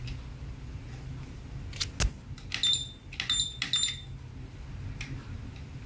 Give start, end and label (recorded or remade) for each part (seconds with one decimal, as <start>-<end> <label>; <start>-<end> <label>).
0.0-5.9 recorded